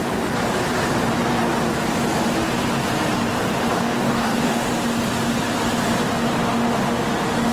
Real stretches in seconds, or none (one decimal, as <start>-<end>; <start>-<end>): 0.0-3.7; 4.7-7.5

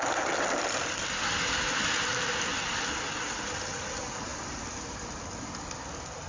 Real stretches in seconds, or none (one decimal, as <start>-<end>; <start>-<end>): 0.0-6.3

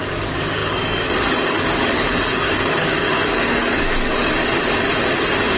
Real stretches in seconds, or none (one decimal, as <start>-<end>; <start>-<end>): 4.4-5.6

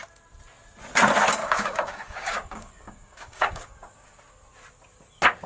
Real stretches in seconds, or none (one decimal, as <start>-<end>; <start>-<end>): 0.0-1.4; 4.2-5.5

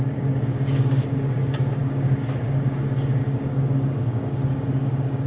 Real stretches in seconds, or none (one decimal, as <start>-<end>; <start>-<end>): none

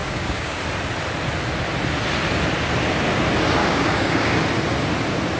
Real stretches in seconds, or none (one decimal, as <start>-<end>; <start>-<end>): 0.6-3.6; 4.4-5.4